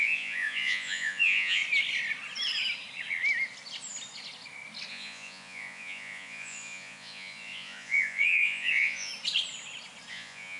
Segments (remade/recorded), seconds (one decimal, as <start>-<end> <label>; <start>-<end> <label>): 0.0-1.6 remade; 1.6-4.9 recorded; 4.9-9.1 remade; 9.1-10.1 recorded; 10.1-10.6 remade